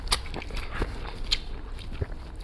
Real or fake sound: real